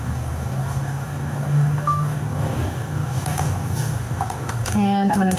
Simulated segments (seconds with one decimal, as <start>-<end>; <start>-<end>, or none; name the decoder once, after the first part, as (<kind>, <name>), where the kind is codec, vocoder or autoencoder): 0.0-5.4 (codec, DAC)